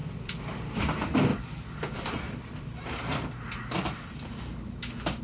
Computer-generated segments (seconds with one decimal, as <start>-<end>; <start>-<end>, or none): 0.0-0.8; 1.3-4.3